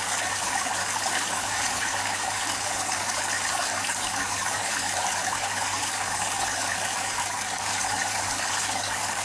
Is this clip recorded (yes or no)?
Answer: no